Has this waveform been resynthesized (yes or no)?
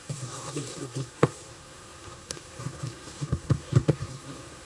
yes